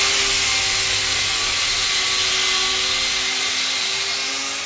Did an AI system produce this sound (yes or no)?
no